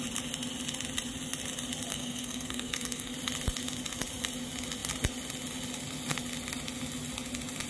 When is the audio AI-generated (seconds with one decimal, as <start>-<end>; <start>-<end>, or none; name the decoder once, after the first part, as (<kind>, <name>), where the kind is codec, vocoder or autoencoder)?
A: 1.9-3.1 (codec, SNAC)

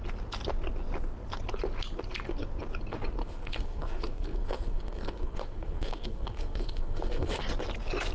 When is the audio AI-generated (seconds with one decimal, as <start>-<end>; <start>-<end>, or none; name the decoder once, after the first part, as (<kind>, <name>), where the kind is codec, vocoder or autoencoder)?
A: 3.2-7.4 (codec, SNAC)

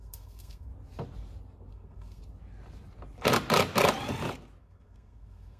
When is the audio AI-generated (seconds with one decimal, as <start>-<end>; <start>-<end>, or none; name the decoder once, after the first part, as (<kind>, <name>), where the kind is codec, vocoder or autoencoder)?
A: 0.0-0.7 (codec, SNAC); 1.7-2.2; 4.6-5.6

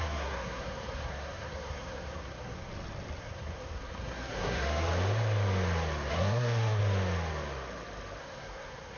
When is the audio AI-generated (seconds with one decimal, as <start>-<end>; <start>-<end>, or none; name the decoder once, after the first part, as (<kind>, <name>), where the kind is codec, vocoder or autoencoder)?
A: 0.0-2.7 (codec, SNAC); 3.2-4.9; 6.1-6.8; 8.2-9.0

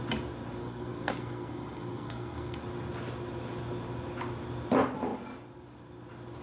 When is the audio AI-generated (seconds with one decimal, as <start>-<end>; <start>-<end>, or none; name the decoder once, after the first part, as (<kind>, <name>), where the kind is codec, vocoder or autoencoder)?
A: 0.6-2.6 (codec, SNAC)